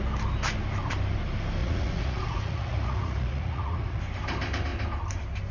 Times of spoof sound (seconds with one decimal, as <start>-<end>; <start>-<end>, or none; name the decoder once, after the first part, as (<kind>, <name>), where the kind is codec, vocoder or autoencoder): 1.6-4.0 (vocoder, Vocos)